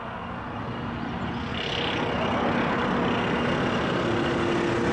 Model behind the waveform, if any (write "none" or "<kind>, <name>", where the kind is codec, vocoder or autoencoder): none